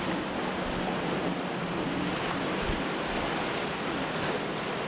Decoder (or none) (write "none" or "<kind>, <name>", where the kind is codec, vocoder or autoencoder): none